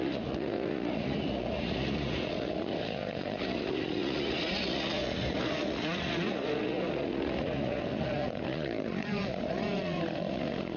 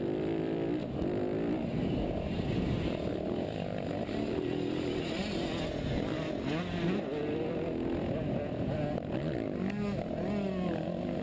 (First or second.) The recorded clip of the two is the second